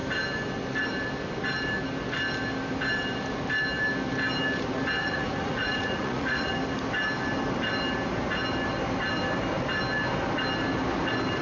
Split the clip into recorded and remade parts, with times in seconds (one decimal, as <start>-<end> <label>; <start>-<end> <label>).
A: 0.0-5.0 recorded; 5.0-6.5 remade; 6.5-11.4 recorded